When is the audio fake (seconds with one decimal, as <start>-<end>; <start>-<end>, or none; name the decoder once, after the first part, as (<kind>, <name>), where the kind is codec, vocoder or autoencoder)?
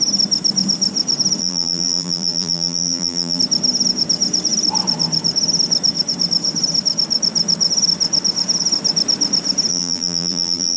1.4-3.4 (vocoder, BigVGAN v2); 9.7-10.8